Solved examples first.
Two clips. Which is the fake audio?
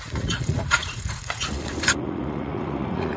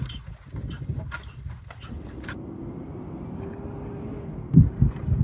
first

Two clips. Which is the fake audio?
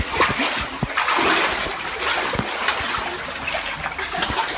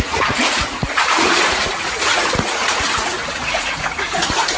second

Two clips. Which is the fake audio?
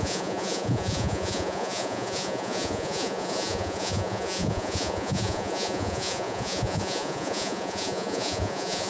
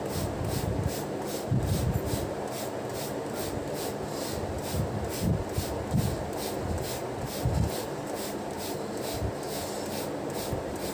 first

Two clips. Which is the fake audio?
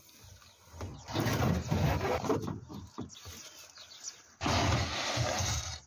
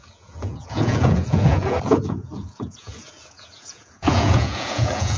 second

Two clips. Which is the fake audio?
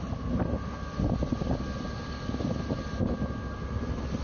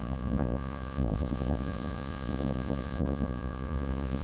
second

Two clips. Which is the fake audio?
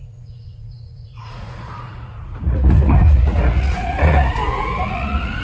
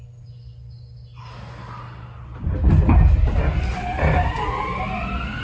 first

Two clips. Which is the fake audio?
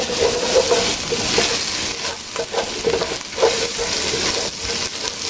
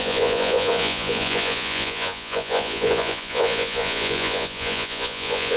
second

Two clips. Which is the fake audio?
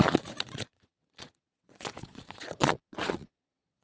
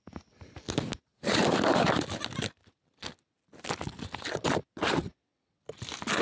first